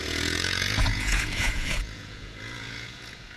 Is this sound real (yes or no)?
no